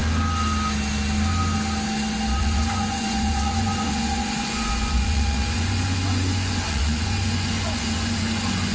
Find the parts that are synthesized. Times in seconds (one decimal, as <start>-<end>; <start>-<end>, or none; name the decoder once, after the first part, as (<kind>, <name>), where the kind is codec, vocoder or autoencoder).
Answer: 2.4-8.7 (vocoder, Vocos)